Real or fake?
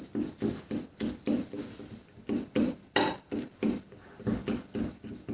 real